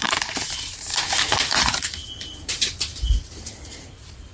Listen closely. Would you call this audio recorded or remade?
remade